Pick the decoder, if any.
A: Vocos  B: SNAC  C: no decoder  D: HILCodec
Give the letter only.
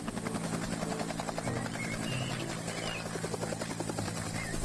C